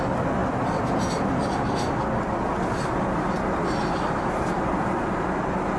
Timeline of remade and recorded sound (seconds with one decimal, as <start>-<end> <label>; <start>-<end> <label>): 0.0-5.8 recorded

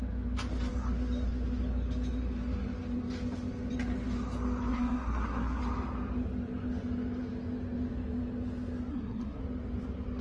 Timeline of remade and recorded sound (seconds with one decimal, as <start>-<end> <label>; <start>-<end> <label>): 0.0-4.7 recorded; 4.7-5.6 remade; 5.6-8.9 recorded; 8.9-9.4 remade; 9.4-10.2 recorded

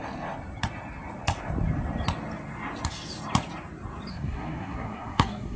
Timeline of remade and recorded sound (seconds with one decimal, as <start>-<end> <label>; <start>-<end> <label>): 0.0-4.1 recorded; 4.1-5.6 remade

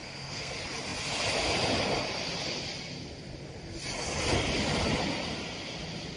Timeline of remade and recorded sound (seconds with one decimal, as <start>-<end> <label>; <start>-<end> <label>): 0.0-0.5 remade; 0.5-6.2 recorded